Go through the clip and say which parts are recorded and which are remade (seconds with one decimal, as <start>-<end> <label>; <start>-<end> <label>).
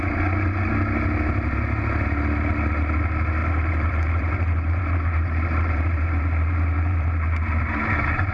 0.0-3.4 recorded; 3.4-8.3 remade